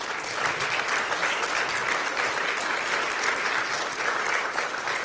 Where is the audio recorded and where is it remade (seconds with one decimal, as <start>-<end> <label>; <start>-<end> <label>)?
0.0-5.0 recorded